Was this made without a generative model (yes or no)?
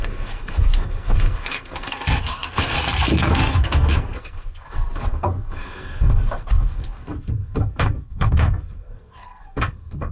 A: no